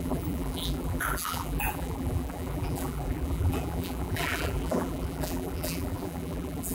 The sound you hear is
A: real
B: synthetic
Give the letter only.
B